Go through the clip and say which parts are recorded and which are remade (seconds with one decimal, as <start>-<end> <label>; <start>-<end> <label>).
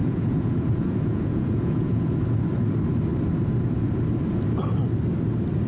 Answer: 0.0-2.1 remade; 2.1-5.7 recorded